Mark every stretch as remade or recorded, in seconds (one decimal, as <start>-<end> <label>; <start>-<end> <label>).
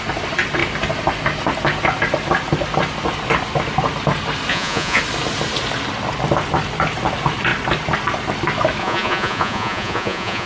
0.0-4.5 recorded; 4.5-5.0 remade; 5.0-8.8 recorded; 8.8-10.5 remade